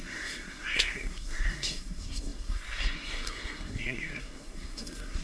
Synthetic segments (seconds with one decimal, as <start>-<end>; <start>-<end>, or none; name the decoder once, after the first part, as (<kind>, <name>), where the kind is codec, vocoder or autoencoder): 0.0-5.2 (codec, SNAC)